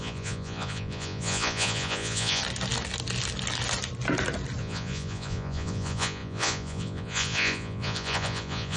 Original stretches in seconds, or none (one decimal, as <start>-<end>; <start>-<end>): 2.4-4.6